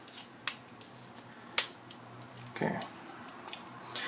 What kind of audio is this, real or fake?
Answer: real